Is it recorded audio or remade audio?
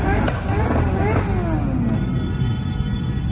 recorded